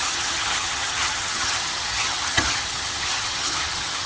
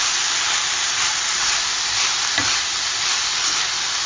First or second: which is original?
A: second